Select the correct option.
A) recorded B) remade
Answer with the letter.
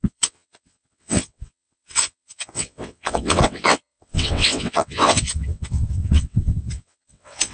B